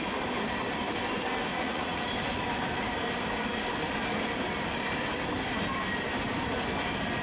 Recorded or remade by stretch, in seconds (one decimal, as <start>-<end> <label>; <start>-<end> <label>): 0.0-1.5 recorded; 1.5-2.1 remade; 2.1-7.2 recorded